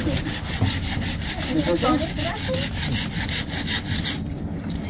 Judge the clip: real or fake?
real